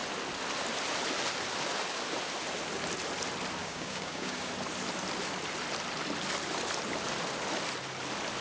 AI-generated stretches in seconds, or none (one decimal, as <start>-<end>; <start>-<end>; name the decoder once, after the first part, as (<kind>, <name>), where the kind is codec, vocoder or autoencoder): 3.6-4.5 (codec, DAC)